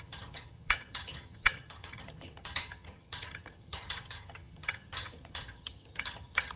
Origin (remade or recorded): remade